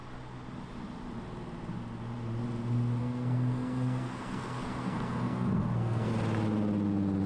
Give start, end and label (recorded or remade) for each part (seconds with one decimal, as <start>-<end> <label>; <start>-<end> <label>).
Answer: 0.0-3.0 recorded; 3.0-6.1 remade; 6.1-7.3 recorded